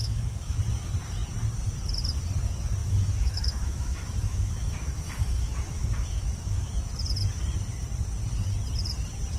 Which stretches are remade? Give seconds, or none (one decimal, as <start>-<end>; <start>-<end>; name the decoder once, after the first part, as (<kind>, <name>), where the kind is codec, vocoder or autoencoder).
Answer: 0.0-0.6 (autoencoder, DAC-VAE); 2.8-6.7